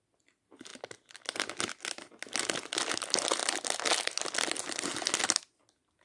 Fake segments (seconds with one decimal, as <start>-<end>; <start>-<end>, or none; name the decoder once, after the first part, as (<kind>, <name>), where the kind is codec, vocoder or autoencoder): none